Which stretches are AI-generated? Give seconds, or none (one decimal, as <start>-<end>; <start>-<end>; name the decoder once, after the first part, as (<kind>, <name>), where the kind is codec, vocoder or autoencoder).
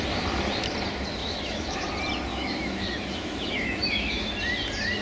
1.2-1.9 (autoencoder, DAC-VAE); 2.3-4.3